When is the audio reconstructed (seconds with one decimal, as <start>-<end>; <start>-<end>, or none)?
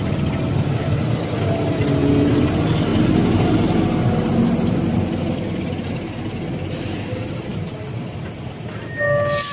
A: none